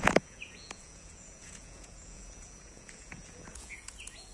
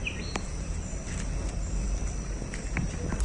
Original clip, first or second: second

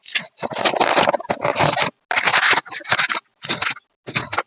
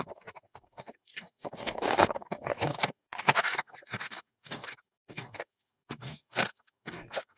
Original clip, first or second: first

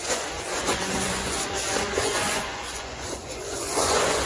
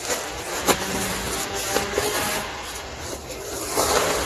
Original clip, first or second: second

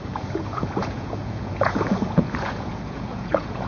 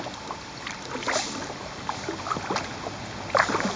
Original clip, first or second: second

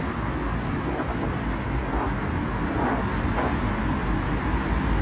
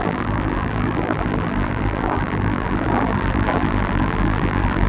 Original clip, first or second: first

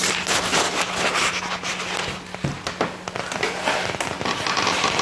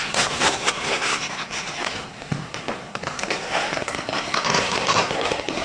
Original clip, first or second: first